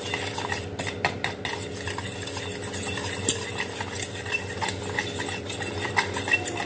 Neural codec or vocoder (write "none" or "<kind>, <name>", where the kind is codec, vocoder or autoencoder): none